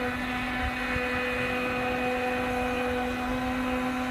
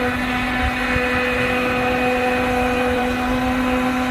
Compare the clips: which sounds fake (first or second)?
second